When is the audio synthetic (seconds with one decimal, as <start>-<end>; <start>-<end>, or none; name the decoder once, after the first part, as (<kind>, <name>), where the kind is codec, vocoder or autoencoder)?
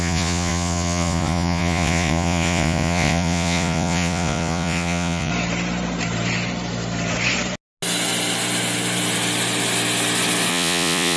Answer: 0.0-5.3 (vocoder, Vocos); 10.5-11.2